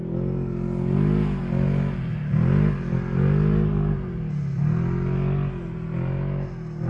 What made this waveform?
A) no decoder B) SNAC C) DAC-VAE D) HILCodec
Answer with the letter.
A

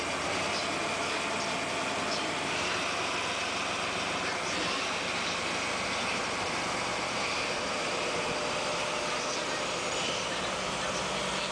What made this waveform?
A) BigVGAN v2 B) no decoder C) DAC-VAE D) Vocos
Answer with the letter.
B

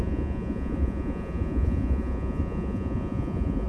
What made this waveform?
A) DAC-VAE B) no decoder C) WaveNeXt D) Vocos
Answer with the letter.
D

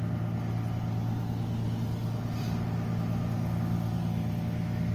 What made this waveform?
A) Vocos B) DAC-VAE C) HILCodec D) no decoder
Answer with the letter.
D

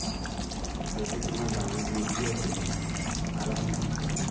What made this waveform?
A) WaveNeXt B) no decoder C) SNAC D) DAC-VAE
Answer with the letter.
B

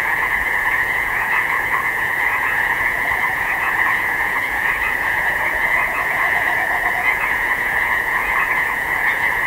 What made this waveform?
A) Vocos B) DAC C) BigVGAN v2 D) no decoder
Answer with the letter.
A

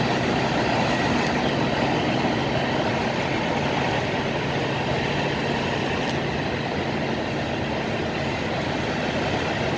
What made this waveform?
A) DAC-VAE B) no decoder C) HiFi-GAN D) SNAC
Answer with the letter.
B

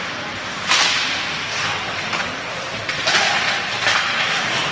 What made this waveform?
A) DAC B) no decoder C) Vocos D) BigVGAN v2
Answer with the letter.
D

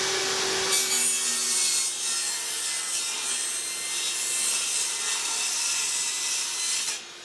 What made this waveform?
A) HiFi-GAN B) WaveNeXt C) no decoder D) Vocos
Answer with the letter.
C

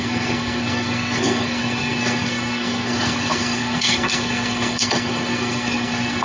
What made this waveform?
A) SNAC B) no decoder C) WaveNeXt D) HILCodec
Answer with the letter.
A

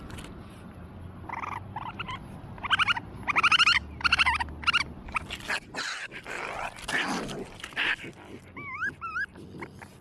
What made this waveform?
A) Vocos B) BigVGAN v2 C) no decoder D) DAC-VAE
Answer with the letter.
C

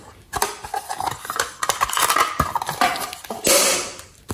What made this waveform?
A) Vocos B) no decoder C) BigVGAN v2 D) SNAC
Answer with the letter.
B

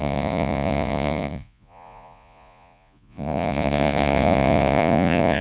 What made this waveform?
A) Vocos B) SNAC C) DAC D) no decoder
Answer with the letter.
A